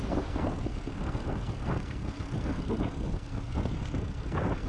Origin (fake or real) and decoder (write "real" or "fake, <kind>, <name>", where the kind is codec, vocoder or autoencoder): fake, codec, SNAC